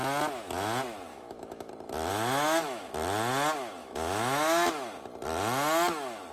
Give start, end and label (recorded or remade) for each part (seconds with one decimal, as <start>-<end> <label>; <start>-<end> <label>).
0.0-1.1 recorded; 1.1-1.7 remade; 1.7-2.1 recorded; 2.1-2.9 remade; 2.9-3.8 recorded; 3.8-4.7 remade; 4.7-6.3 recorded